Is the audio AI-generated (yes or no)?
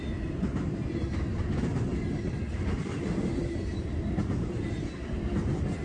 no